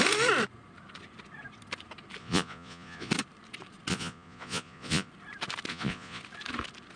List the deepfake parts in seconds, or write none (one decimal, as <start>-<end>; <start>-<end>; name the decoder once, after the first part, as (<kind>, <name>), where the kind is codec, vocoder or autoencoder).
2.2-3.1 (vocoder, Vocos); 3.9-5.1; 5.7-6.2